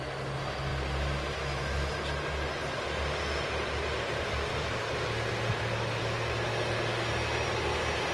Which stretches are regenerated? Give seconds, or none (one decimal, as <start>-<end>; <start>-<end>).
none